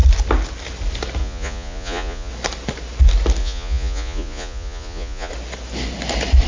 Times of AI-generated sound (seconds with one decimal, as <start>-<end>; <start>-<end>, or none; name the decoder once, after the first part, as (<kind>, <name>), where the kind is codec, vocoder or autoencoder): 1.2-2.3 (vocoder, Vocos); 3.4-5.3

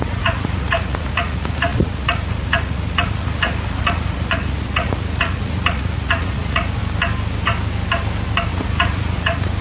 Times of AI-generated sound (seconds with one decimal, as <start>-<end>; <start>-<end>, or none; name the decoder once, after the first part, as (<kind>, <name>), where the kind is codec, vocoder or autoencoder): 0.0-6.8 (vocoder, Vocos); 8.5-9.6

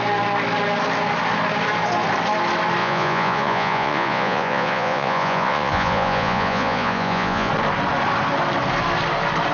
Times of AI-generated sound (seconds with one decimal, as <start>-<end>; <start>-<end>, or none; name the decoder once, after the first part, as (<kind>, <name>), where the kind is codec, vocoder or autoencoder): 2.8-7.5 (vocoder, Vocos)